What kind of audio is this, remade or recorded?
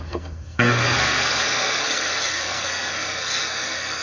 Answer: remade